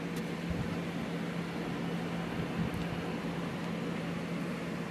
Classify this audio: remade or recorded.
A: recorded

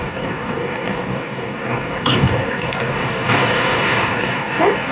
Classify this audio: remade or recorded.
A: remade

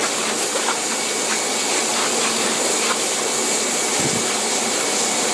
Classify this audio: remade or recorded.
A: recorded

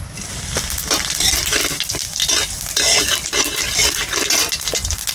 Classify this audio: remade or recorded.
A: recorded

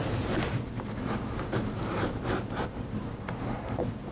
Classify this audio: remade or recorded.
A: remade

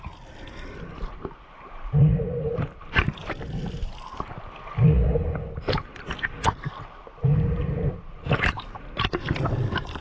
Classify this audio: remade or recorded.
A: recorded